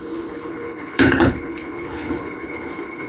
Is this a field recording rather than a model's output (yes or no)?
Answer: no